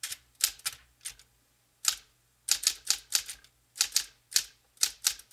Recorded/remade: recorded